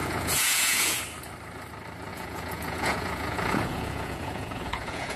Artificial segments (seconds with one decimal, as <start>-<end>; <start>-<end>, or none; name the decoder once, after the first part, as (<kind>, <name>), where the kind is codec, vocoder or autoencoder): 0.0-1.0 (vocoder, Vocos); 2.1-5.2